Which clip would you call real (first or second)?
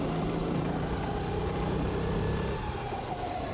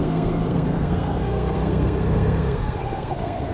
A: first